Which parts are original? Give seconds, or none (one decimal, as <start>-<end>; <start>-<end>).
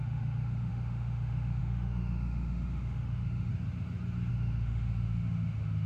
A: 3.5-4.3